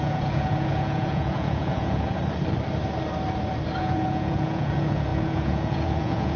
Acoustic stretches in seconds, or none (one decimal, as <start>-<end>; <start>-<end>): 2.2-3.8